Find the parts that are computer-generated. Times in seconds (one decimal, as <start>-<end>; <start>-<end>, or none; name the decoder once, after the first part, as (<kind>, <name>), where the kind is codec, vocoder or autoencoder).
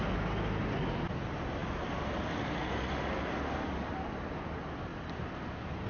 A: none